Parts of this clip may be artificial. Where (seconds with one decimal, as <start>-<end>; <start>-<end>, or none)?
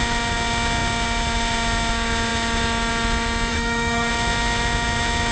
3.5-4.1